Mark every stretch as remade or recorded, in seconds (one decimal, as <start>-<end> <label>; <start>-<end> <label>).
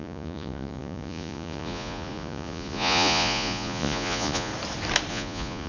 0.0-4.5 remade; 4.5-5.1 recorded; 5.1-5.7 remade